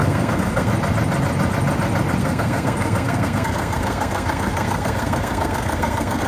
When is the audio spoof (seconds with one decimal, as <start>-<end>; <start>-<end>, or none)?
0.0-0.7; 2.2-6.3